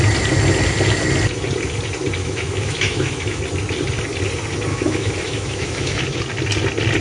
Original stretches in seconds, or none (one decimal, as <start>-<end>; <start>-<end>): 0.0-2.2; 3.4-4.7; 6.2-7.0